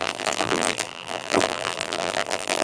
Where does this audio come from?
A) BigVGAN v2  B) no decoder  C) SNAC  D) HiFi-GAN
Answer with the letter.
A